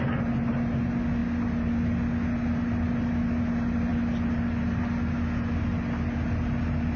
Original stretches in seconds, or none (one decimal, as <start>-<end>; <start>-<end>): 0.0-7.0